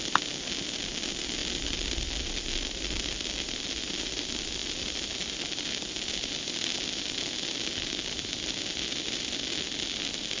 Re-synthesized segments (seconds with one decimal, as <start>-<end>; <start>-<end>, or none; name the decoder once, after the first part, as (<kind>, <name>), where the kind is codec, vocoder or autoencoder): 1.4-3.8 (vocoder, BigVGAN v2)